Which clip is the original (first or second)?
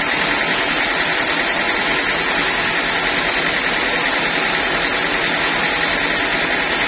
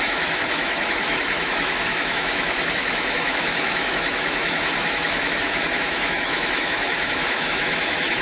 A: first